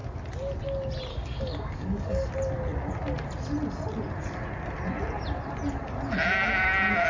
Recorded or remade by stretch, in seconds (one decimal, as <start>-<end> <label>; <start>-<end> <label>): 0.0-1.1 recorded; 1.1-2.3 remade; 2.3-7.1 recorded